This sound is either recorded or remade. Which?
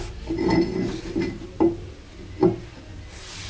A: recorded